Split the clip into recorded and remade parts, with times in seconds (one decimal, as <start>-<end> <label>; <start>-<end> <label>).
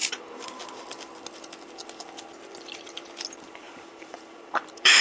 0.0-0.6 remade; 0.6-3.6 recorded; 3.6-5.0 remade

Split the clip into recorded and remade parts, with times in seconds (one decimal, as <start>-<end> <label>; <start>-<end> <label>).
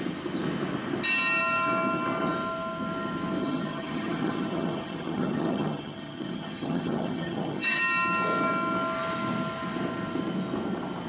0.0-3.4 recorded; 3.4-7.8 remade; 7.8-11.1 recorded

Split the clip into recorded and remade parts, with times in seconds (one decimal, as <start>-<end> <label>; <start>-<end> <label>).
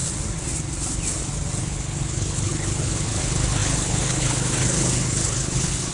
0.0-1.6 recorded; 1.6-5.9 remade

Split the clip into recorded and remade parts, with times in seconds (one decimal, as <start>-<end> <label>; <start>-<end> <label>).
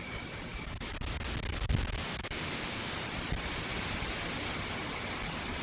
0.0-5.6 recorded